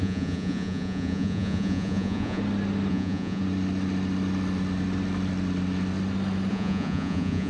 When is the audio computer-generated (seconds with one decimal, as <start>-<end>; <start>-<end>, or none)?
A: 0.0-2.4; 2.9-3.4; 6.5-7.5